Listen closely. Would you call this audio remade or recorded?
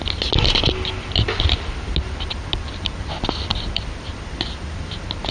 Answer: recorded